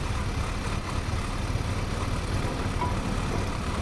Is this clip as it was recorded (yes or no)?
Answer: yes